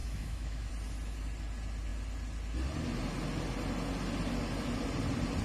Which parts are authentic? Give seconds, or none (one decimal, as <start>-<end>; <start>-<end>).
0.7-5.4